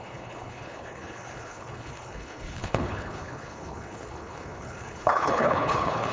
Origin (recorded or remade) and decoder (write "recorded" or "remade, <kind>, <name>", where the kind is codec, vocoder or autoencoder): remade, codec, HILCodec